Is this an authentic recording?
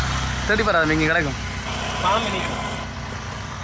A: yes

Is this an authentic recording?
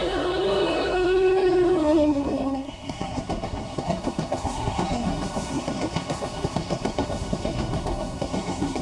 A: no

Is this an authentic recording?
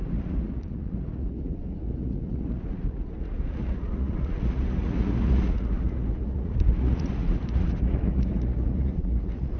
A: no